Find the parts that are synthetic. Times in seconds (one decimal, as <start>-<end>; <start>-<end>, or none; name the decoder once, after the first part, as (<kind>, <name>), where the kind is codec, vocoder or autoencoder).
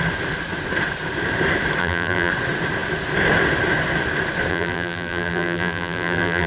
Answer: 1.8-2.3 (vocoder, BigVGAN v2); 4.5-6.5